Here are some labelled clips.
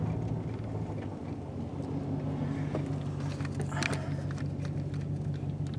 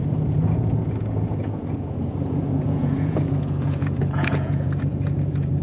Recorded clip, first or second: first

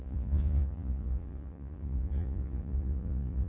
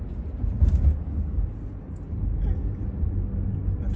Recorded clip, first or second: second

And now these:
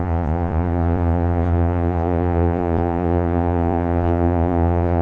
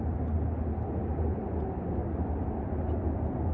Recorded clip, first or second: second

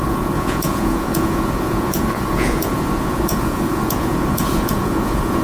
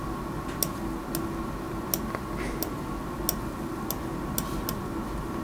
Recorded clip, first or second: second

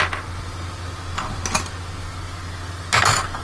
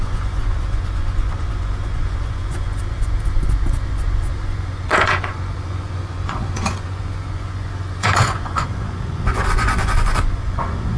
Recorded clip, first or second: first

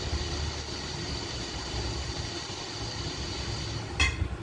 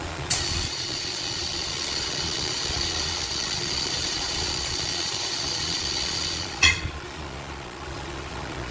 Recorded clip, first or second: first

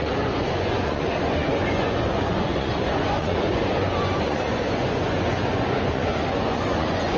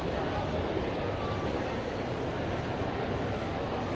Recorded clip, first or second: second